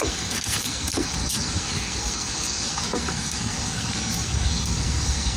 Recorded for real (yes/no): no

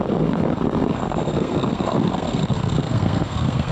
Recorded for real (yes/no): no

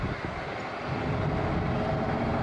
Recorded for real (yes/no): yes